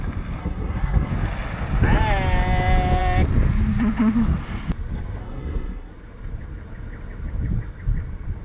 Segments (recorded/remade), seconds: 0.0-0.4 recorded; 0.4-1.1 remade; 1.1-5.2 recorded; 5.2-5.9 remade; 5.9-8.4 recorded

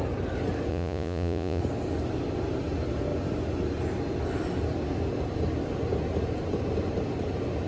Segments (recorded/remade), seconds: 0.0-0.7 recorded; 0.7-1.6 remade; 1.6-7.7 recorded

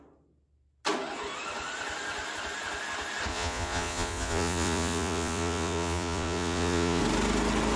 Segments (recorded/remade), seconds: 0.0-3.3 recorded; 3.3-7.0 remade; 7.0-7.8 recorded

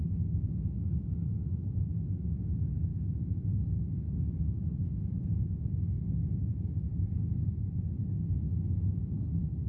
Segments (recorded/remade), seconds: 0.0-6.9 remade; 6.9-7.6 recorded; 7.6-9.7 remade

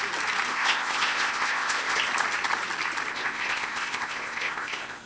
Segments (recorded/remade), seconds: 0.0-0.5 recorded; 0.5-2.0 remade; 2.0-3.1 recorded; 3.1-5.1 remade

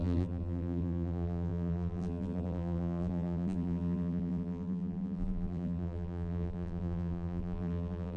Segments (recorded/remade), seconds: 0.0-8.2 remade

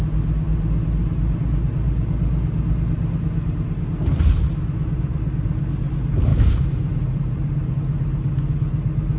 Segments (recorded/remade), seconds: 0.0-6.3 recorded; 6.3-7.7 remade; 7.7-9.2 recorded

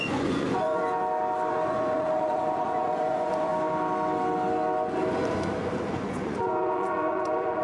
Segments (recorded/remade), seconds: 0.0-0.8 remade; 0.8-1.5 recorded; 1.5-3.5 remade; 3.5-5.9 recorded; 5.9-7.6 remade